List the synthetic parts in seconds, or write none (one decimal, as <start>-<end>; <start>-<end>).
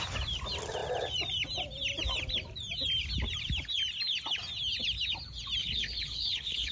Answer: 5.6-6.7